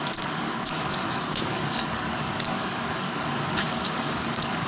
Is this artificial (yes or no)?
yes